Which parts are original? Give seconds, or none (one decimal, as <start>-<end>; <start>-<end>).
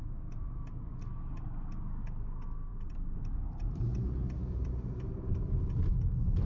0.0-2.7; 5.9-6.5